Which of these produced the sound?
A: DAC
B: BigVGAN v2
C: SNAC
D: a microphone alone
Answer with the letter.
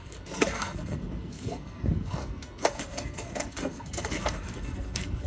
C